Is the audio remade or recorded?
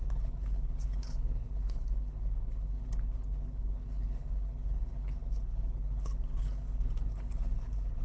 remade